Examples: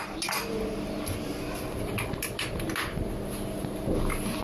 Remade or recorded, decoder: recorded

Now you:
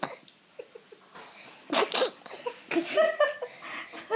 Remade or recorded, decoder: recorded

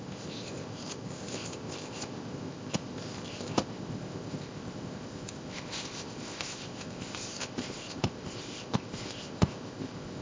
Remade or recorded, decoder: remade, codec, ZipCodec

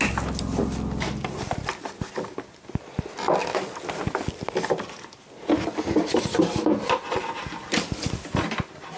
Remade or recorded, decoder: recorded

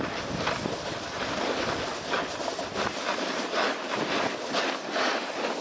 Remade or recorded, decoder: recorded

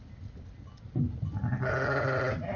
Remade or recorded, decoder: recorded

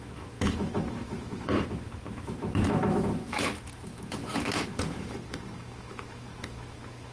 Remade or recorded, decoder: remade, autoencoder, DAC-VAE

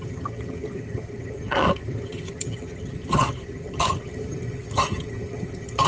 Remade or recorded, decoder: remade, vocoder, HiFi-GAN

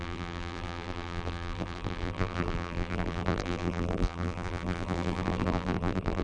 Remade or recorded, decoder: remade, vocoder, BigVGAN v2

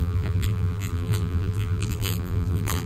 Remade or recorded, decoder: remade, vocoder, BigVGAN v2